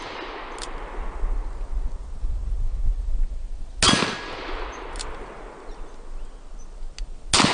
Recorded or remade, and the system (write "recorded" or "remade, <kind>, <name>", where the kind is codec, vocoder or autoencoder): recorded